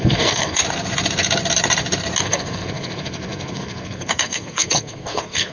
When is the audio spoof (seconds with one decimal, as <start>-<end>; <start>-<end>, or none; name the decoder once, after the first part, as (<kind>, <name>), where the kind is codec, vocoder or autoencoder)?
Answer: 0.0-0.6 (codec, SNAC); 2.2-5.5